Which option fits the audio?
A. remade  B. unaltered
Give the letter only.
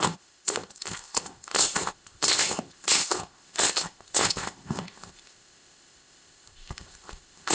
A